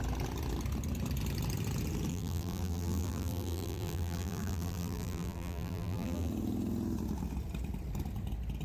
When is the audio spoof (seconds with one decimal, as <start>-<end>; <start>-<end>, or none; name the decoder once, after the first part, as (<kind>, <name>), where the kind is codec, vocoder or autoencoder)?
2.1-6.3 (vocoder, BigVGAN v2)